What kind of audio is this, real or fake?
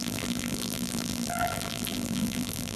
fake